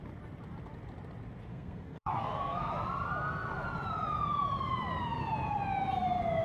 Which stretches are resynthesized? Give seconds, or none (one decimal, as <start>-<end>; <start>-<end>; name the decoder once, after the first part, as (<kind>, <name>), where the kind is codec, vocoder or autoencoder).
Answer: 1.5-2.7 (codec, SNAC)